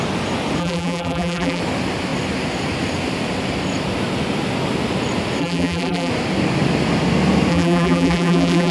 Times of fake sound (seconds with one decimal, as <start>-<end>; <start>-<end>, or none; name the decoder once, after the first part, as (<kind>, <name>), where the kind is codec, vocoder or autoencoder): 0.6-1.6 (vocoder, BigVGAN v2); 5.4-6.1; 7.5-8.7